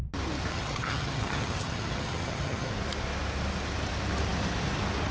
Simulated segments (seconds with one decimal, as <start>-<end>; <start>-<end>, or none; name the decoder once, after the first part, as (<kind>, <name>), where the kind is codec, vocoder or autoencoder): 0.5-2.7 (vocoder, HiFi-GAN)